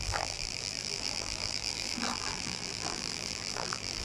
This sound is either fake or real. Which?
fake